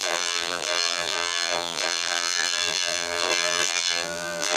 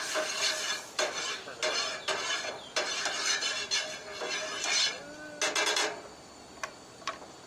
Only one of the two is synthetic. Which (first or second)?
first